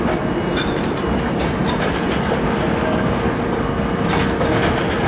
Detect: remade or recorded recorded